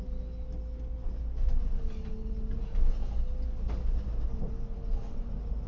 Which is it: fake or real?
real